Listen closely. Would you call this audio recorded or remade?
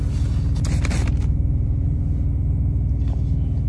recorded